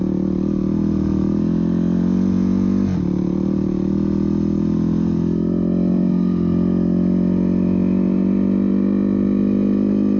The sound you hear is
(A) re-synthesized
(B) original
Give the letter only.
B